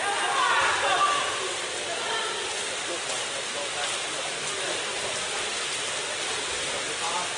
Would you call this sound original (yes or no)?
yes